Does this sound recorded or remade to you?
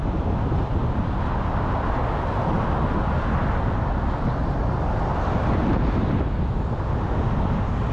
recorded